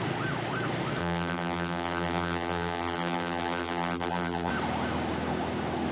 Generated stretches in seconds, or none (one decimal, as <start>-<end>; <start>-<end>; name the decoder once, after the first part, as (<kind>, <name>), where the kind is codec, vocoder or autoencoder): 1.0-4.5 (vocoder, BigVGAN v2)